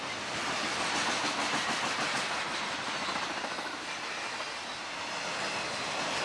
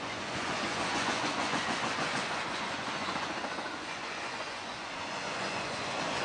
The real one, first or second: first